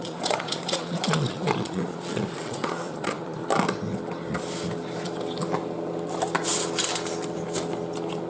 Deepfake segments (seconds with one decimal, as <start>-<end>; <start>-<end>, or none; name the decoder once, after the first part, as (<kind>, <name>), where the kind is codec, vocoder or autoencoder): 0.0-3.4 (vocoder, Vocos)